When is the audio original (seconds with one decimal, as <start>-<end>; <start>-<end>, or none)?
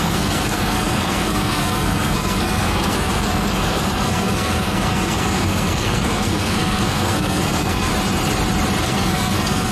7.9-8.8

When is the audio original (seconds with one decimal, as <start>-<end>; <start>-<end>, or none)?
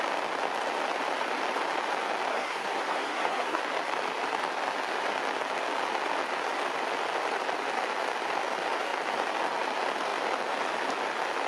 0.0-2.3; 3.6-11.5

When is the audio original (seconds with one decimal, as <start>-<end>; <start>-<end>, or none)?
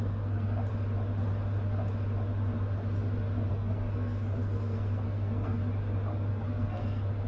0.7-3.5; 5.6-6.3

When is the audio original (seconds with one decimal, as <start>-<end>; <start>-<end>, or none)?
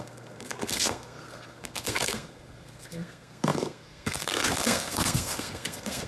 none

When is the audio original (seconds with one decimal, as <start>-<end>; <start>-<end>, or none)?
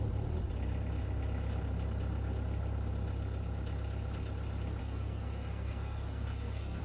0.0-4.8